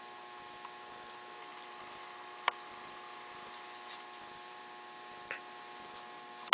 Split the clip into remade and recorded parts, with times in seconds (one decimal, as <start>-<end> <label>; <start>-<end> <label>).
0.0-1.5 recorded; 1.5-5.4 remade; 5.4-6.5 recorded